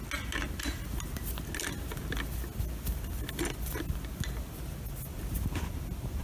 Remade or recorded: recorded